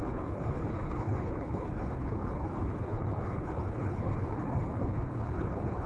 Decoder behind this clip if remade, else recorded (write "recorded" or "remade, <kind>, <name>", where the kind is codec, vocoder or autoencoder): remade, codec, HILCodec